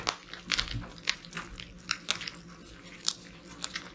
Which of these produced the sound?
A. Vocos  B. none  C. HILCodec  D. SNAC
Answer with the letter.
B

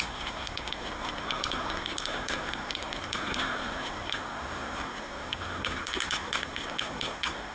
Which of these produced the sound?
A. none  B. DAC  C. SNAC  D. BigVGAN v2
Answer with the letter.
C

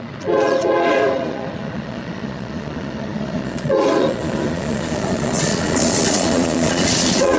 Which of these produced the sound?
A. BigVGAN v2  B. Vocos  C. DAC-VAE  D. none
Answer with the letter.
B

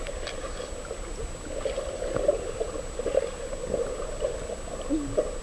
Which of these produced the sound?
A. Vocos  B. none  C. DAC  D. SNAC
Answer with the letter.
B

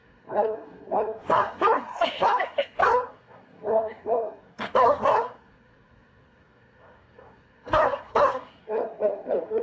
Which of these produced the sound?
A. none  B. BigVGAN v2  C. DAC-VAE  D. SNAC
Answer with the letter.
D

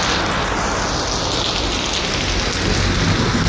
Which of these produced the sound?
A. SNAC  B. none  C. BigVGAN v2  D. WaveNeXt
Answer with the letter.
B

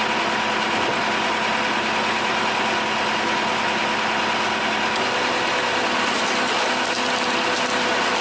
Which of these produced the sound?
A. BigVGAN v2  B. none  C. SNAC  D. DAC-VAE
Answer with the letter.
B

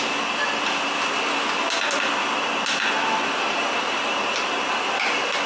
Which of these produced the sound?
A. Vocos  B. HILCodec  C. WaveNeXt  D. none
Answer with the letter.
D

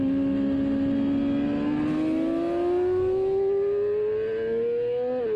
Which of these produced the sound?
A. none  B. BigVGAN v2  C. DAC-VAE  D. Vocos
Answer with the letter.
A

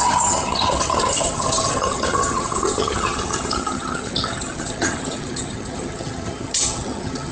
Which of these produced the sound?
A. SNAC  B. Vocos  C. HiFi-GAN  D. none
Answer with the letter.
C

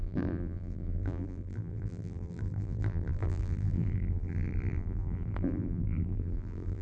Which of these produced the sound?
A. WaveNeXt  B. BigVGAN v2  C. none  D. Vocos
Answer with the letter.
B